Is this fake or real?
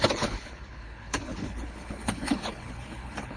fake